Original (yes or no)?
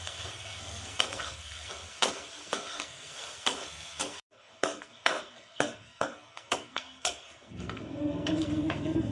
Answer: no